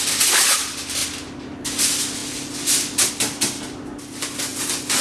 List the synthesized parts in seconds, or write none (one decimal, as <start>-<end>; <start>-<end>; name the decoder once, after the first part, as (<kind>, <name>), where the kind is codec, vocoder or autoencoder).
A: none